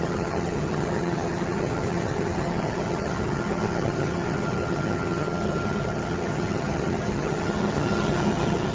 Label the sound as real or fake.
fake